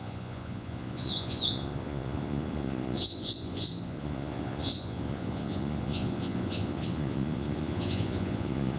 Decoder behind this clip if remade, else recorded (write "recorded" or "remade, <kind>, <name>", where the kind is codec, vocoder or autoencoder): remade, vocoder, Vocos